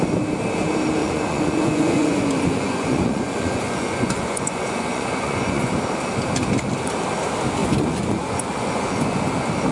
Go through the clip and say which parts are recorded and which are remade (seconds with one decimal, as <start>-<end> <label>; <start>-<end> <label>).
0.0-1.0 recorded; 1.0-5.7 remade; 5.7-7.6 recorded; 7.6-9.2 remade; 9.2-9.7 recorded